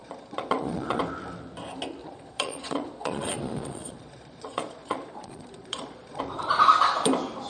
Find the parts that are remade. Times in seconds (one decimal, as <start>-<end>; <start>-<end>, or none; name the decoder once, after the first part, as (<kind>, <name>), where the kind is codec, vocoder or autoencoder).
0.0-1.0 (vocoder, Vocos); 2.0-6.2